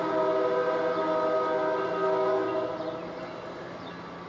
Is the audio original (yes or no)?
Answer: yes